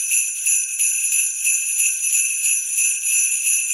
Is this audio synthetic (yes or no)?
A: no